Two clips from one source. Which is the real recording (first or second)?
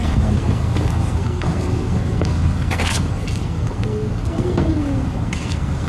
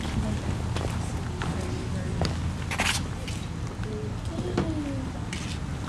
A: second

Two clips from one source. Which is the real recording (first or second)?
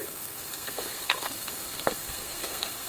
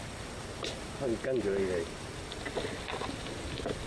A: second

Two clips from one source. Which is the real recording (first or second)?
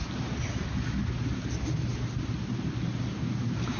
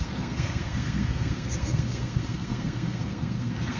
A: first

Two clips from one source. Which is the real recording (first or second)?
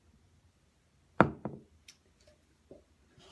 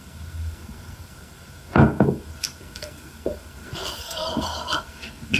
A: first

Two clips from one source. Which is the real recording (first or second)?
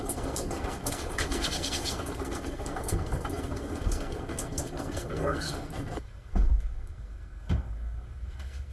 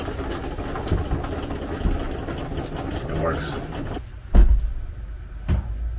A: second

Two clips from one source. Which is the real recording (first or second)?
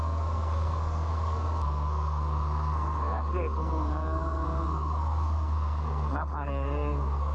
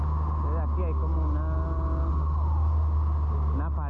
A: second